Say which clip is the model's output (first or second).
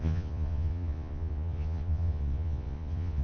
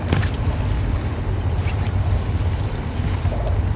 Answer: first